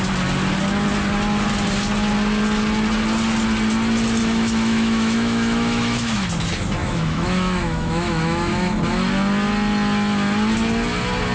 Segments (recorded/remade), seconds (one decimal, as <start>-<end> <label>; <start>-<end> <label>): 0.0-4.2 recorded; 4.2-6.3 remade; 6.3-6.8 recorded; 6.8-8.5 remade; 8.5-11.3 recorded